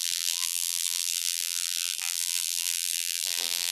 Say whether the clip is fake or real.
fake